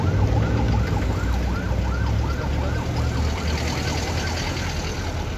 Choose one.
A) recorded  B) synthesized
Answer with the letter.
A